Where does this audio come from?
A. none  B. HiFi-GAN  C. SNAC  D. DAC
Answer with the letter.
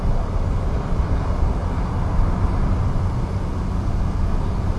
A